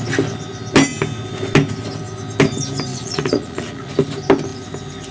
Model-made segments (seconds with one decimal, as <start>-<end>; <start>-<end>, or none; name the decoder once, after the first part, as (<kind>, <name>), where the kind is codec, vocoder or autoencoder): 2.9-3.9 (vocoder, Vocos)